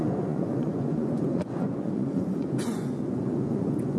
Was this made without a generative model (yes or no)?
no